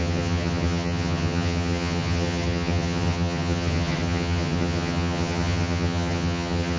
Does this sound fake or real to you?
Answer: fake